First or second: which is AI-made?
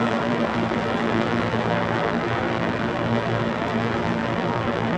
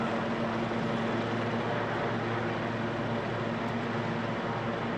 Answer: first